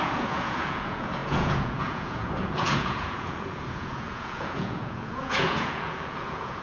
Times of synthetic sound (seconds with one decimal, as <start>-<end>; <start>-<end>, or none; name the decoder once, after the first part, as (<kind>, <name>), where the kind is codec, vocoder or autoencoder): 0.0-6.6 (vocoder, Vocos)